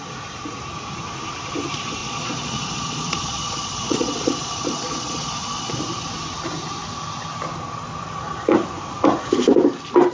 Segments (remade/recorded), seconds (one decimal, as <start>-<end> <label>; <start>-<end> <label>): 0.0-2.0 recorded; 2.0-5.7 remade; 5.7-10.1 recorded